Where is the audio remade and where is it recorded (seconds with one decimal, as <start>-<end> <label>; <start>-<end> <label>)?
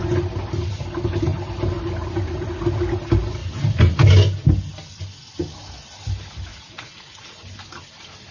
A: 0.0-6.5 recorded; 6.5-7.4 remade; 7.4-8.3 recorded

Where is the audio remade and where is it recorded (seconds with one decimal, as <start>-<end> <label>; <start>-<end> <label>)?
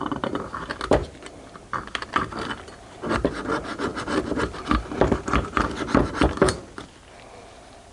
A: 0.0-7.9 recorded